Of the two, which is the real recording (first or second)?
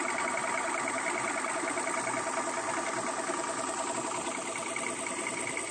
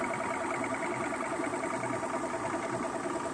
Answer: first